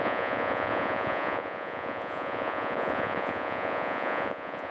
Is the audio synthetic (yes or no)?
yes